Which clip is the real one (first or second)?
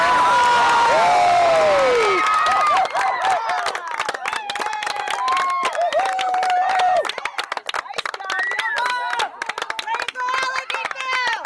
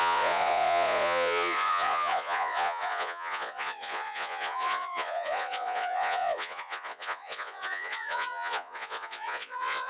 first